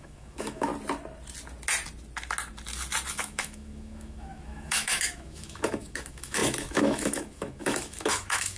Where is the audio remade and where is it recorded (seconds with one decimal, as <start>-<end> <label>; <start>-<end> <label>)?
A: 0.0-0.7 remade; 0.7-3.1 recorded; 3.1-8.6 remade